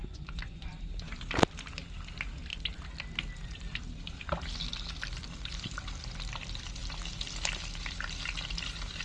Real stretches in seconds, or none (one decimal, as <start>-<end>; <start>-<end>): 0.7-9.0